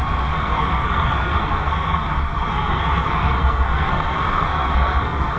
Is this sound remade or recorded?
remade